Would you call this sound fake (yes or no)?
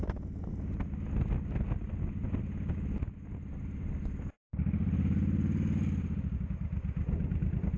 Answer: no